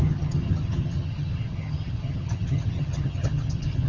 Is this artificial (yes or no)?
yes